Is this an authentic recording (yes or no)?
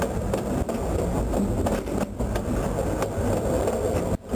yes